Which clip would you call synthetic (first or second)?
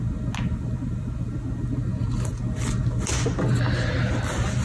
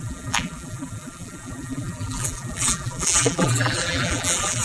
second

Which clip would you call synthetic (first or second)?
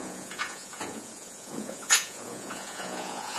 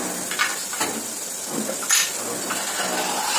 first